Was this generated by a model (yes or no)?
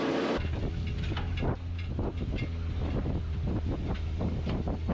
no